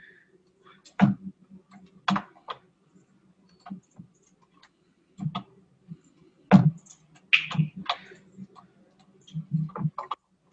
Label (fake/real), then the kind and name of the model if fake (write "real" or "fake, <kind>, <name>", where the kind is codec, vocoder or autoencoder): real